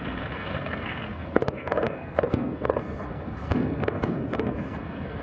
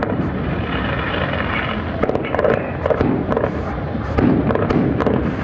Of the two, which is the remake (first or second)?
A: first